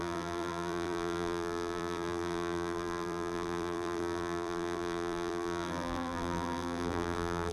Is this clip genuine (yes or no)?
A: no